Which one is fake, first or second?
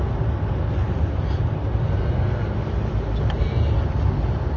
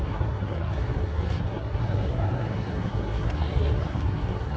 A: second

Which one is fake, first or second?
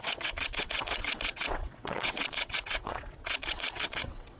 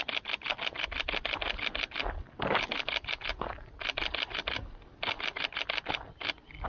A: first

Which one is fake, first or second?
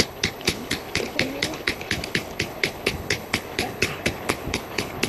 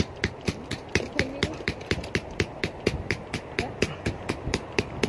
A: first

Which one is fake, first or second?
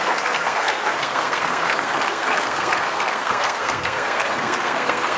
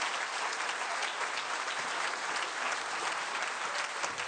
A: first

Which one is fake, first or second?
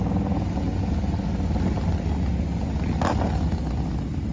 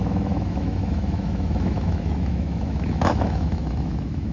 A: second